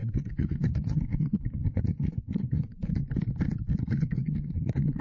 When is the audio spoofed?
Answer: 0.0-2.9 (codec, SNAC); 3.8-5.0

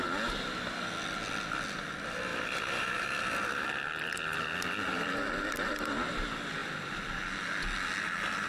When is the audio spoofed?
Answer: 2.3-3.7 (vocoder, BigVGAN v2); 6.6-7.4

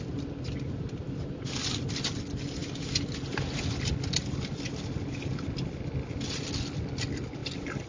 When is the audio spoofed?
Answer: none